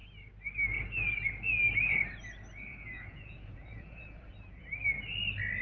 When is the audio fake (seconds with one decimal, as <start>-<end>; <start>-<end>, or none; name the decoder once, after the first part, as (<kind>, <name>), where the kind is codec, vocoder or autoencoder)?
2.7-4.3 (vocoder, Vocos)